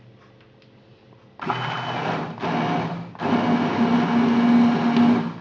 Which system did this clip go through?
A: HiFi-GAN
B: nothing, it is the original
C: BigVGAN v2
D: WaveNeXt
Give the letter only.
B